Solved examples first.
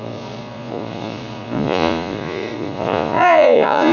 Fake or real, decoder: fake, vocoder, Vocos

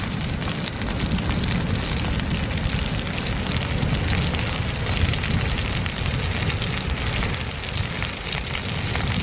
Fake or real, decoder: real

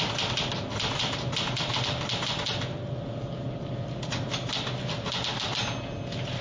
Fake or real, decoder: real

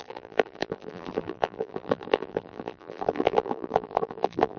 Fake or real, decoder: fake, vocoder, BigVGAN v2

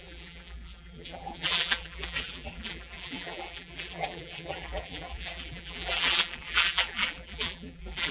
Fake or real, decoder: fake, vocoder, BigVGAN v2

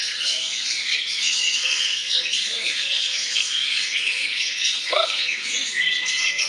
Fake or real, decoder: fake, codec, SNAC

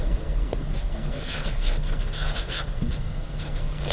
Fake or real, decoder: fake, codec, SNAC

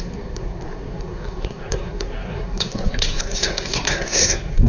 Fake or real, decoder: fake, codec, SNAC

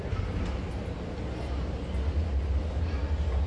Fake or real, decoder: real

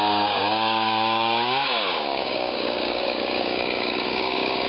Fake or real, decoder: fake, codec, DAC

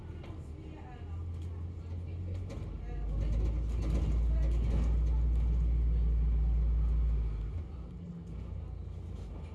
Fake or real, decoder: real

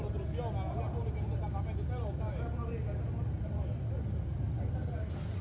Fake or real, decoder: real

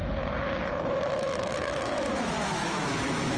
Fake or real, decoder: fake, autoencoder, DAC-VAE